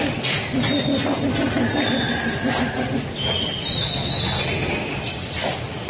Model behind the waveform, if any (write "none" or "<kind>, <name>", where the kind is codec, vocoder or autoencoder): none